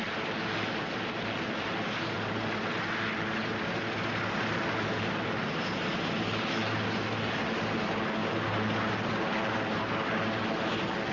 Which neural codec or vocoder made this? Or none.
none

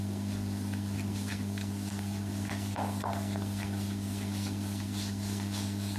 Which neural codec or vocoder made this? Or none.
codec, SNAC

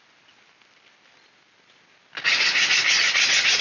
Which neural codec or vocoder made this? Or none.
none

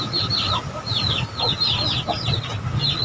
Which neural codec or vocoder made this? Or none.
none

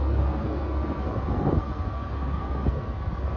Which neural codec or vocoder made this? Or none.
codec, SNAC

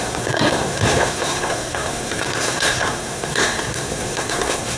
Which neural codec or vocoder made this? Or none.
codec, SNAC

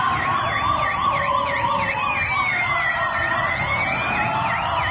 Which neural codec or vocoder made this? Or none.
none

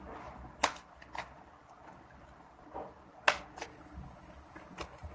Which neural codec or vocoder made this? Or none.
none